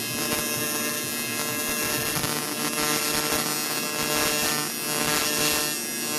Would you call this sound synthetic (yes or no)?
no